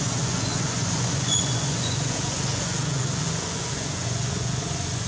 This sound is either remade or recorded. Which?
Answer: remade